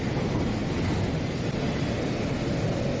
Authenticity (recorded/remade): recorded